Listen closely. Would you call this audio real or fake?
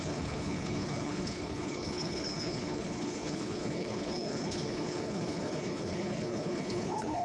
fake